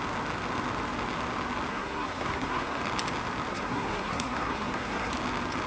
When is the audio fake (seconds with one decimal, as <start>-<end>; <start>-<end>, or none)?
1.7-2.8; 3.5-5.1